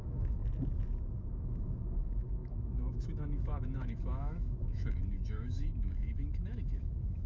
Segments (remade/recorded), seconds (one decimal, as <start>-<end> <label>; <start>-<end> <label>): 0.0-0.4 remade; 0.4-1.3 recorded; 1.3-7.3 remade